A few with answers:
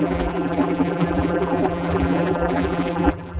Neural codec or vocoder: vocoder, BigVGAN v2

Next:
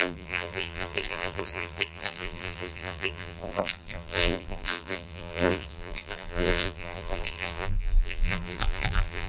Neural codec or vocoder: vocoder, BigVGAN v2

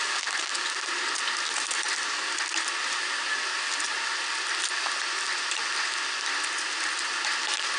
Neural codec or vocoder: none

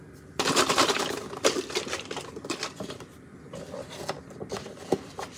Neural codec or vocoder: vocoder, BigVGAN v2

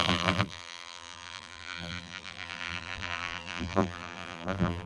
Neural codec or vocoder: vocoder, BigVGAN v2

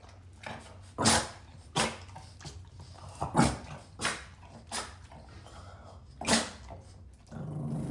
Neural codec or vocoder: none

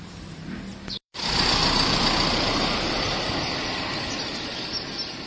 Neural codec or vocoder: vocoder, BigVGAN v2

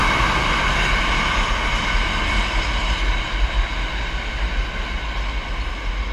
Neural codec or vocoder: none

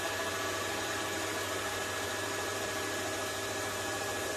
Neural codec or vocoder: vocoder, BigVGAN v2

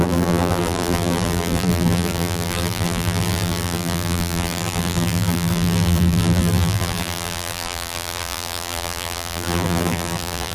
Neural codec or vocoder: vocoder, BigVGAN v2